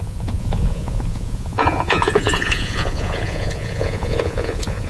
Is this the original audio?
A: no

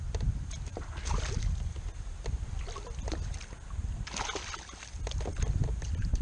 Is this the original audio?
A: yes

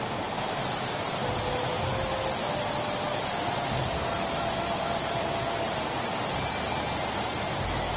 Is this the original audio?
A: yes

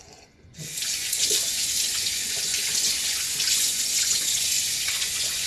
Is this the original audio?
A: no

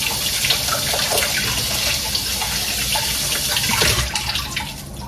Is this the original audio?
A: yes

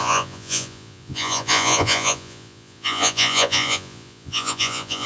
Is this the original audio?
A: no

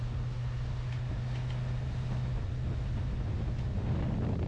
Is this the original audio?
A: yes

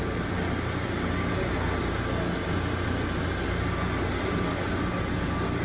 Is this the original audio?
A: yes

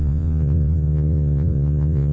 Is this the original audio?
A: no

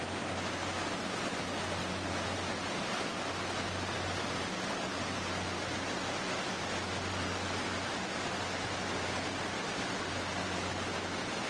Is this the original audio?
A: yes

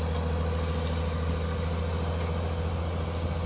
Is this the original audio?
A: yes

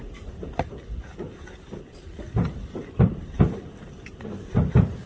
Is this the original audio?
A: yes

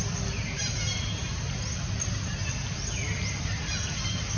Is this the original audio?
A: yes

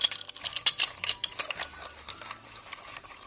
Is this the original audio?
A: yes